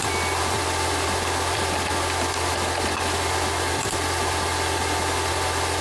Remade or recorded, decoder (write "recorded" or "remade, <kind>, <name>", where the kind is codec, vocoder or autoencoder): recorded